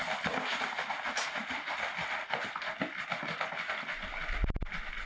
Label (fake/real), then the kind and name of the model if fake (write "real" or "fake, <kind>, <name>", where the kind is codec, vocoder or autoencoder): real